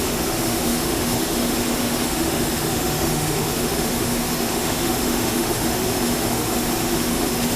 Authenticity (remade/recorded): remade